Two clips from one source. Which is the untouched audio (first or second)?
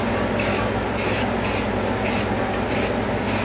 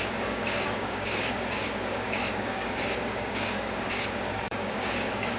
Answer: first